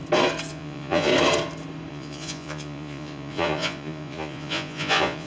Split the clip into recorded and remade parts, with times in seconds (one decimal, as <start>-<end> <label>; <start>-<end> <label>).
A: 0.0-0.5 recorded; 0.5-1.1 remade; 1.1-1.9 recorded; 1.9-5.3 remade